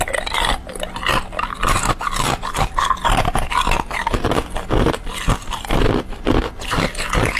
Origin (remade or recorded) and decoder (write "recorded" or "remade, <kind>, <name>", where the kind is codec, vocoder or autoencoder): recorded